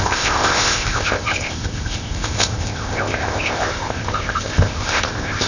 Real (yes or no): no